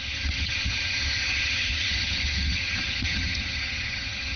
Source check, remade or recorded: remade